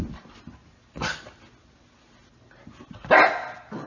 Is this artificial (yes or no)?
no